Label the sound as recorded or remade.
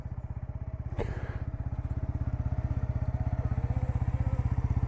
remade